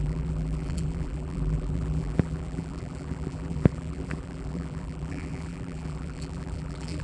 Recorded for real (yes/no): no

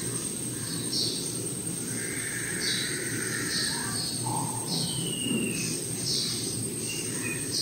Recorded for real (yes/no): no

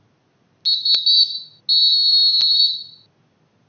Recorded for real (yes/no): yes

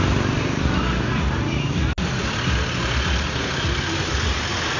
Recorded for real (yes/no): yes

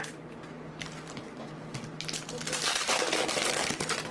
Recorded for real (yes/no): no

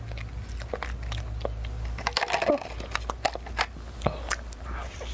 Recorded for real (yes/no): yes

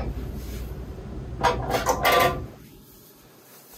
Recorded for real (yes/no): yes